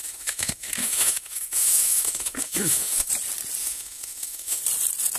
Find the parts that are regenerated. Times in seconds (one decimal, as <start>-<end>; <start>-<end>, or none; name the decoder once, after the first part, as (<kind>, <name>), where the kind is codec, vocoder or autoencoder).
0.0-3.1 (autoencoder, DAC-VAE); 3.6-4.6